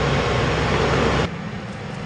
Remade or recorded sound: recorded